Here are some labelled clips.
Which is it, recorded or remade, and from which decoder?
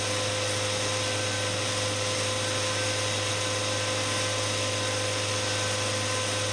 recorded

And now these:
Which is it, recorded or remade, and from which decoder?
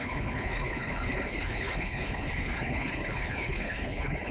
remade, codec, HILCodec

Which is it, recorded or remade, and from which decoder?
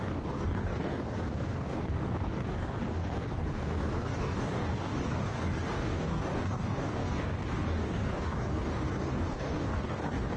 remade, codec, DAC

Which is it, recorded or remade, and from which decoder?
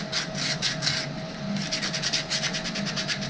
recorded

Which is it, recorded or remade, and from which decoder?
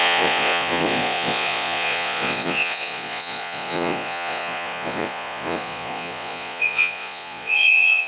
remade, vocoder, Vocos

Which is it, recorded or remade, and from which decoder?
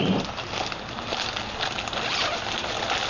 recorded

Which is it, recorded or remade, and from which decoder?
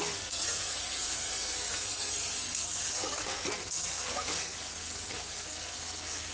remade, codec, SNAC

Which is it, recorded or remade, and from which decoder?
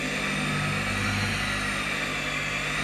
recorded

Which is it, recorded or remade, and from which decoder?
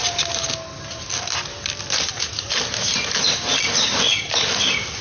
recorded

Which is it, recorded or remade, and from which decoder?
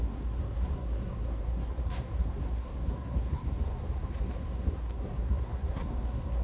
remade, codec, SNAC